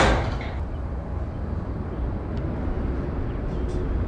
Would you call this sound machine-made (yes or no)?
no